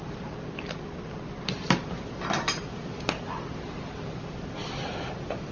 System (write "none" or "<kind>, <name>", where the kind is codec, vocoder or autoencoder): none